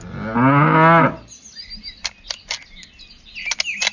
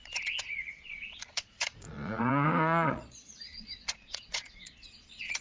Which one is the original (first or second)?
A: first